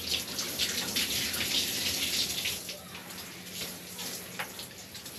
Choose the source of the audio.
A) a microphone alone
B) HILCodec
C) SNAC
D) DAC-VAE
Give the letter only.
A